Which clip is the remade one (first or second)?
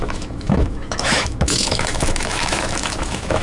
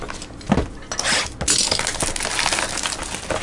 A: first